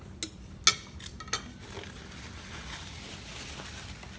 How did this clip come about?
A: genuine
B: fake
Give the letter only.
A